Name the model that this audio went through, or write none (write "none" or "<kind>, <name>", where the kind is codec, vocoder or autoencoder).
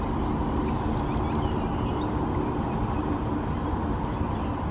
none